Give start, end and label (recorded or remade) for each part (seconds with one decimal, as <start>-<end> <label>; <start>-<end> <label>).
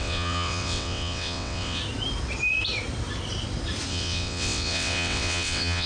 0.0-1.8 remade; 1.8-3.9 recorded; 3.9-5.9 remade